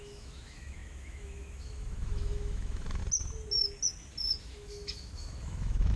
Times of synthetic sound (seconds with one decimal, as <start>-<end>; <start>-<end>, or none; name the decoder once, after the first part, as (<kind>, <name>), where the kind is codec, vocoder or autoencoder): 0.0-3.0 (autoencoder, DAC-VAE); 4.4-6.0